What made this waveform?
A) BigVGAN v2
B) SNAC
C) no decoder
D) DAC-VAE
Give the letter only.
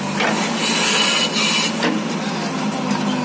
C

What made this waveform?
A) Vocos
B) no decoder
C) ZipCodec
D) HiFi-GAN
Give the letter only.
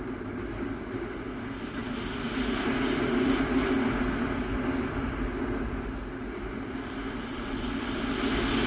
B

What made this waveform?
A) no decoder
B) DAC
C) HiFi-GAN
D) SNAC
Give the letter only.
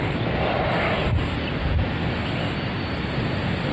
A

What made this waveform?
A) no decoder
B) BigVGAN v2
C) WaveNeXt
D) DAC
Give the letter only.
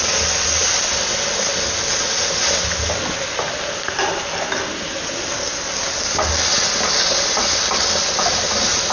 A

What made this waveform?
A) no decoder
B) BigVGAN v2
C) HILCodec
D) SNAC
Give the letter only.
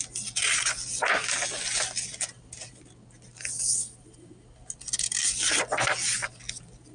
A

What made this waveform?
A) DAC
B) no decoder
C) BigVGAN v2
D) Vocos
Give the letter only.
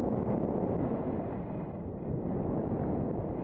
B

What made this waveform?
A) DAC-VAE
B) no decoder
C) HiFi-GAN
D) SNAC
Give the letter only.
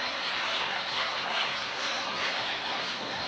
D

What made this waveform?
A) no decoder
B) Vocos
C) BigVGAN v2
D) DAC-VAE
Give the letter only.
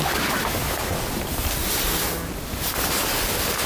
A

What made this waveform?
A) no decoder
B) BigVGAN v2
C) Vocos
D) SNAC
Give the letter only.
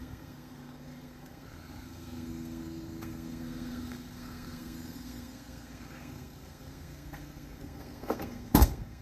D